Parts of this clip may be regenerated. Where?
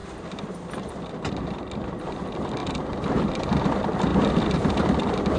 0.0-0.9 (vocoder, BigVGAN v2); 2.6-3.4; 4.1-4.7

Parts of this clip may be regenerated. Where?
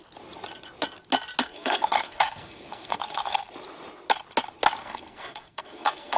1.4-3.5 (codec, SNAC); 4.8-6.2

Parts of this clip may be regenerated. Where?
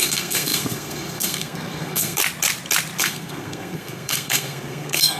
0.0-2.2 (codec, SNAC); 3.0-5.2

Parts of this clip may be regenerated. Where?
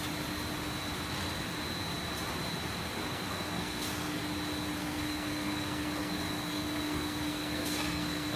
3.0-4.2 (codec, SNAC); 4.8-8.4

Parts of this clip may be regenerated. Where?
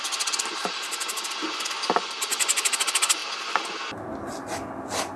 none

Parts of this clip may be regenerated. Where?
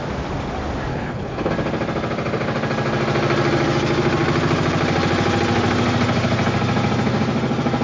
0.9-1.5 (codec, HILCodec)